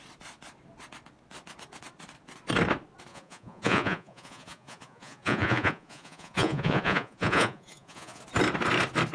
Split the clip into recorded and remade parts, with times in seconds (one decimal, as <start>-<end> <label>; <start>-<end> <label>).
0.0-3.1 recorded; 3.1-8.2 remade; 8.2-9.1 recorded